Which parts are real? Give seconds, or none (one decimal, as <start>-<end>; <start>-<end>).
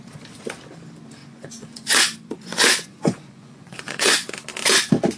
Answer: 0.0-1.2; 4.3-5.2